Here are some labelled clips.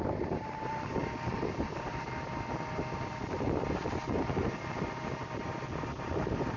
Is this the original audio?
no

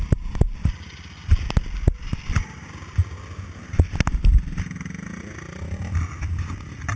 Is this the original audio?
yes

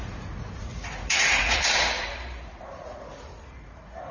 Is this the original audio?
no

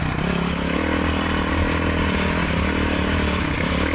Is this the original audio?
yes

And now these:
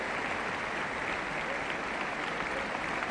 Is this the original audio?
yes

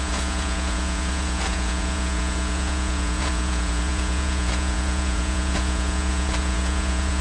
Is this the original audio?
no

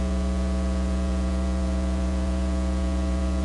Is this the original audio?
no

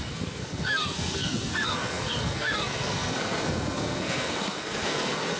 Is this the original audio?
no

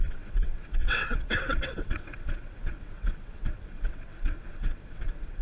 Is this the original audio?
no